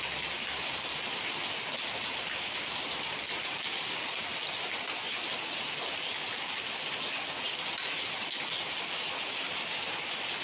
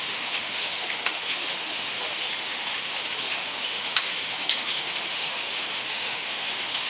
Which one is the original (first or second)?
first